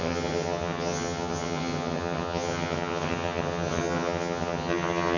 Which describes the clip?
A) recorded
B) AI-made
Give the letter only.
B